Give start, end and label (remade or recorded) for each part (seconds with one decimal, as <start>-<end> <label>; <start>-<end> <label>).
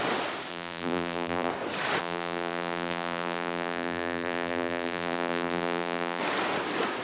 0.0-0.5 recorded; 0.5-1.5 remade; 1.5-2.0 recorded; 2.0-6.2 remade; 6.2-7.0 recorded